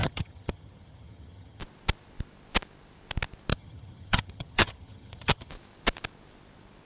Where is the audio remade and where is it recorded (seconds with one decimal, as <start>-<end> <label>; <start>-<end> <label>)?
0.0-1.6 remade; 1.6-3.5 recorded; 3.5-5.5 remade; 5.5-6.9 recorded